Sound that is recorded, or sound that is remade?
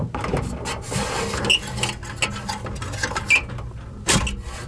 recorded